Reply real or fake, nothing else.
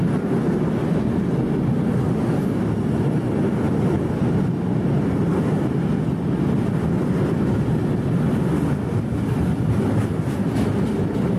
real